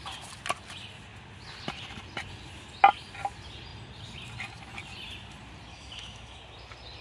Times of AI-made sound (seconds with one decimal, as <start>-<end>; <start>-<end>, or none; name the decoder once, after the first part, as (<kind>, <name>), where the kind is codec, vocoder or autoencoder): 5.7-6.4 (autoencoder, DAC-VAE)